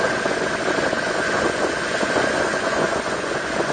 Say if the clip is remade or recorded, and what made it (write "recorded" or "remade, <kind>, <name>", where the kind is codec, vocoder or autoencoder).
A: remade, vocoder, Vocos